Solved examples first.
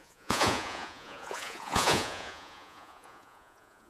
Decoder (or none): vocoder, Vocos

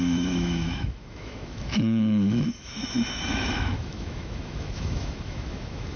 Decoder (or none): autoencoder, DAC-VAE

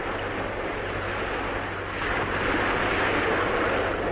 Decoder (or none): none